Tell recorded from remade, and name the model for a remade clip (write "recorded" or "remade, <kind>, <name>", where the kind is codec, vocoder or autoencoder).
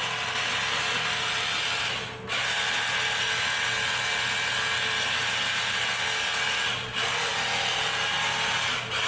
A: recorded